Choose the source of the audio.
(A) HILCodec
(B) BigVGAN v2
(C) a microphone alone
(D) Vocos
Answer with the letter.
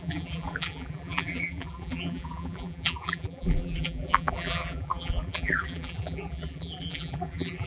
B